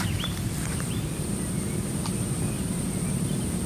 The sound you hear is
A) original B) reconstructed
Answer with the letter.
B